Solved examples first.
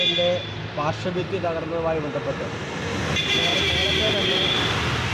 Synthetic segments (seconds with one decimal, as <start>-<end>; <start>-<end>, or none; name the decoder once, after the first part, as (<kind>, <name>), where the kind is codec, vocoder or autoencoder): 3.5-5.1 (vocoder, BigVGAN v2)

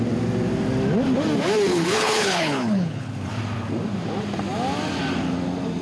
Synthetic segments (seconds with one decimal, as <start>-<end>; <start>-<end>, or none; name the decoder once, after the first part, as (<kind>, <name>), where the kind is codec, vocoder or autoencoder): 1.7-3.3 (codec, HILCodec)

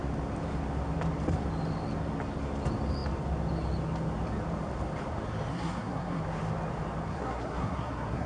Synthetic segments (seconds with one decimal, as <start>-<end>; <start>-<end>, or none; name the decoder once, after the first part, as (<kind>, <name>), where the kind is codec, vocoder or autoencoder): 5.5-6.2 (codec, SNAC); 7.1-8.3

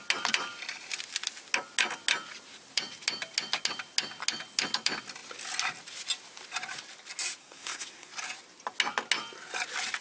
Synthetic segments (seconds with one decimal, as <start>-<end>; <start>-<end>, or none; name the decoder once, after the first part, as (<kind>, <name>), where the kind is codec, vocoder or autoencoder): 7.4-8.1 (codec, SNAC)